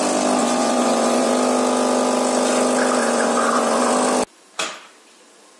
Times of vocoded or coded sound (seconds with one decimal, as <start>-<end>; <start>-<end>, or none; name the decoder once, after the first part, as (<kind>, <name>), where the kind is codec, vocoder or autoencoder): 0.4-1.3 (vocoder, Vocos); 3.0-3.9